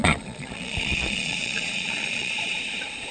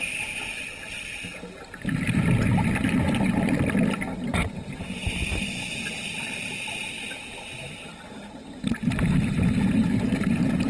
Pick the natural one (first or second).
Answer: second